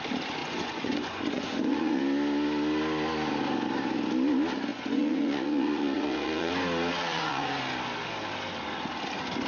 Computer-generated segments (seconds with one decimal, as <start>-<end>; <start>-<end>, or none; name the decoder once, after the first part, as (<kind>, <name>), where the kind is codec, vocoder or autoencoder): 0.4-2.0 (vocoder, Vocos); 4.7-6.5; 7.1-7.6